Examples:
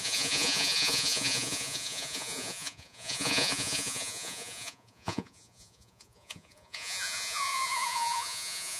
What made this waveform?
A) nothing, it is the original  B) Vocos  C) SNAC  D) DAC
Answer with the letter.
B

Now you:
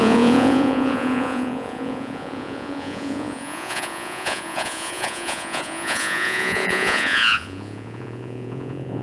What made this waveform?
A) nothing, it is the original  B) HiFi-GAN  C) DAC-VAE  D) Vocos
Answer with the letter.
D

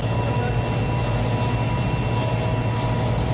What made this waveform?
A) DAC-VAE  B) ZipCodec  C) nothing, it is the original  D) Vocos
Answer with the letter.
C